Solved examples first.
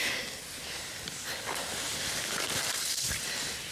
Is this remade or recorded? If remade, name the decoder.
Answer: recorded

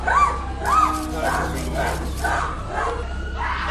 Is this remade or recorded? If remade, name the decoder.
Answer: recorded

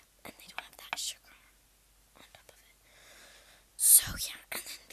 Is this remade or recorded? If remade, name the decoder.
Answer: recorded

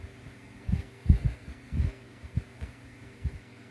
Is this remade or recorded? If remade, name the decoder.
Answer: remade, codec, SNAC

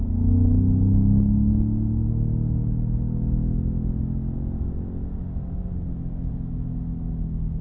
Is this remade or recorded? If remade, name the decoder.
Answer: recorded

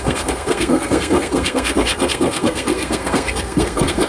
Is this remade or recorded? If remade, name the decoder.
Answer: remade, codec, SNAC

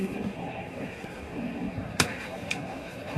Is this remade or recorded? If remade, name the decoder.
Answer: remade, codec, SNAC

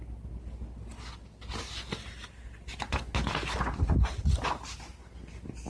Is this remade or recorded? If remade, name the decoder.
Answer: recorded